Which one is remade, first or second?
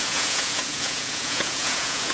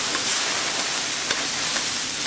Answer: first